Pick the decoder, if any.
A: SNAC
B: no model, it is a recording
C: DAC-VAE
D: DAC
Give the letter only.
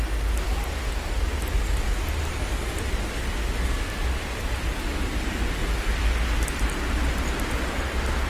B